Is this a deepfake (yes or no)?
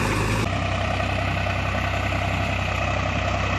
no